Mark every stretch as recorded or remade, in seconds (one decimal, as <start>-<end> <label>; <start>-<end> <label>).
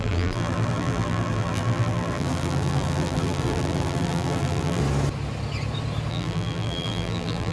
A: 0.0-4.8 remade; 4.8-6.1 recorded; 6.1-7.5 remade